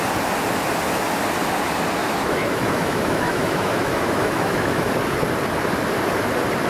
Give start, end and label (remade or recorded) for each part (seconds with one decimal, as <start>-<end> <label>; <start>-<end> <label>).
0.0-2.0 recorded; 2.0-4.9 remade; 4.9-6.7 recorded